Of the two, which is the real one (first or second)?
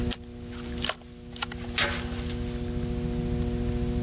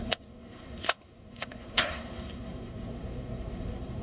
first